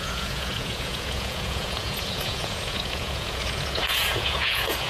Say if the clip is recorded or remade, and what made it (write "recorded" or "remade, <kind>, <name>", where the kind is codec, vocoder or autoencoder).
remade, vocoder, Vocos